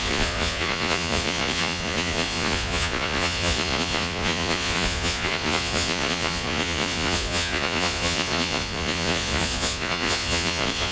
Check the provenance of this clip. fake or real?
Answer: fake